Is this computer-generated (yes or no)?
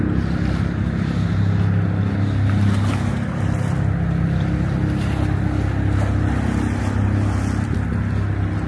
no